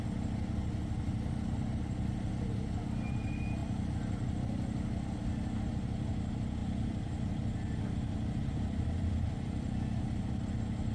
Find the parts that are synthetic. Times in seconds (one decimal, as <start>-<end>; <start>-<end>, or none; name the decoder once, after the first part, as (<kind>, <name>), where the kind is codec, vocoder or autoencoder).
6.6-10.5 (vocoder, BigVGAN v2)